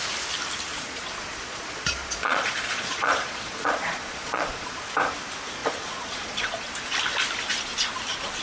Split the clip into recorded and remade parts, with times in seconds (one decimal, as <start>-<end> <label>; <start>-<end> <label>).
0.0-0.7 recorded; 0.7-4.8 remade; 4.8-5.6 recorded; 5.6-6.7 remade; 6.7-8.4 recorded